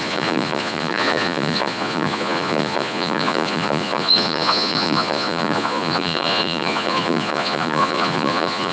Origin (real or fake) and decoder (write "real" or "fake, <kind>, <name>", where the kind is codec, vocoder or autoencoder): fake, vocoder, Vocos